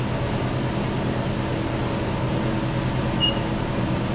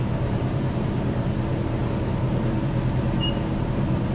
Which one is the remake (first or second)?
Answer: second